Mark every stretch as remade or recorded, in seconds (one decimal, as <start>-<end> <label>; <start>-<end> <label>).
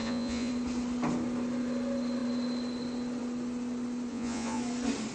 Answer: 0.0-0.5 remade; 0.5-4.1 recorded; 4.1-4.6 remade; 4.6-5.1 recorded